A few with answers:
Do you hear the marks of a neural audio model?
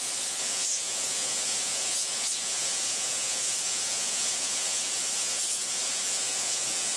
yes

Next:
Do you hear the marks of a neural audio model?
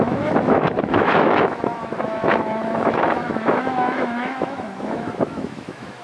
yes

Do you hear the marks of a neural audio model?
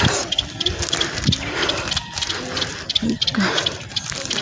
no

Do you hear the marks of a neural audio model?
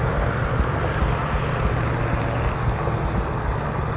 no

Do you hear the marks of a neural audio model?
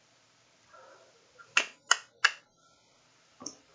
no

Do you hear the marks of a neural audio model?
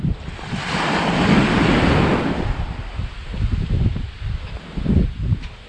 no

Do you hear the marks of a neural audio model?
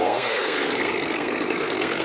yes